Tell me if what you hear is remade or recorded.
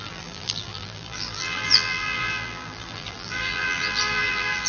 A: remade